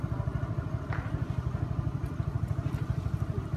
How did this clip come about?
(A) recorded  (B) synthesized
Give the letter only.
A